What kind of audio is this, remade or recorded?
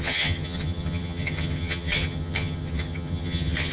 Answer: remade